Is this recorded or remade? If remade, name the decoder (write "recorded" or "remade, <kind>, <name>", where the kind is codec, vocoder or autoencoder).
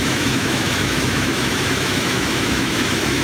remade, autoencoder, DAC-VAE